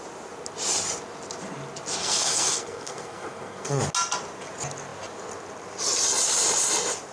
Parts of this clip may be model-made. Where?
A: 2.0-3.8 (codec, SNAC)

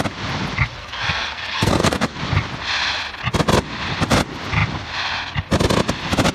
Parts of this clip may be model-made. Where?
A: 0.8-2.2 (codec, SNAC)

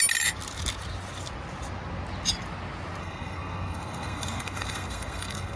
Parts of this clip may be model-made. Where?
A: 3.0-5.6 (codec, SNAC)

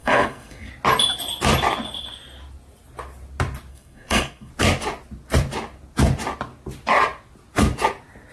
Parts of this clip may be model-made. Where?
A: 0.0-0.7 (codec, SNAC); 3.7-4.5

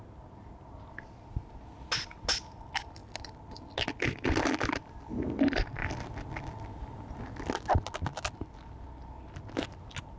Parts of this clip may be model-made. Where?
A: none

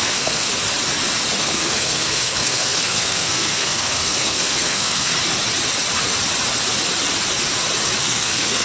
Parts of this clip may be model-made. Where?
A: 0.0-0.5 (codec, SNAC); 1.4-5.1; 8.0-8.6